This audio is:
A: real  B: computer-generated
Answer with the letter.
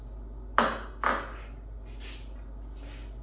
A